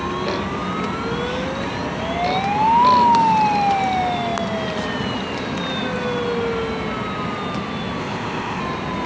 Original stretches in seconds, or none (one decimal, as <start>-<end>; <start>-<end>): 0.0-8.0; 8.6-9.1